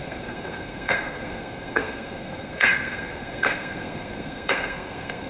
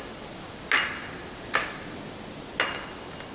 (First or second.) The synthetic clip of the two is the first